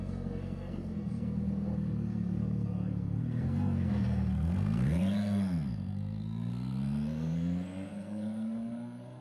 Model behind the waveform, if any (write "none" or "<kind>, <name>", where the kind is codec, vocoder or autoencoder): codec, SNAC